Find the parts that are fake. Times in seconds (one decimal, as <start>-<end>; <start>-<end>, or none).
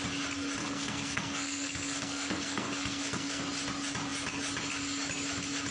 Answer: 0.6-3.4